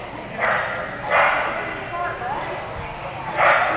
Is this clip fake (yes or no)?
no